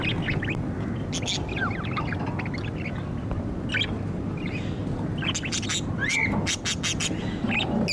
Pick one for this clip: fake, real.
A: real